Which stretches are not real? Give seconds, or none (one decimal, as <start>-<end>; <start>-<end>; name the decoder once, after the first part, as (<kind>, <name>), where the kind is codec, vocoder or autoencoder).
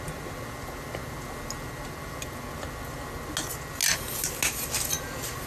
none